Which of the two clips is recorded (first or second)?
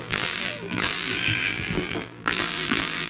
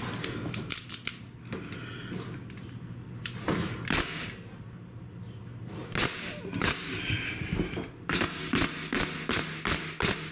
second